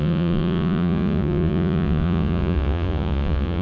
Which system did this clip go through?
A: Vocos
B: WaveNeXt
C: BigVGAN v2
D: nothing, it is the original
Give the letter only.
A